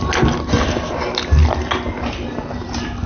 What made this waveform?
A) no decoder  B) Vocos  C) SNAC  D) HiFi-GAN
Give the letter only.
A